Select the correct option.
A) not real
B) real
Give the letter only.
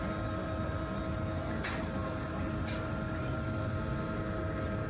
B